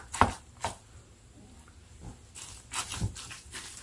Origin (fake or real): real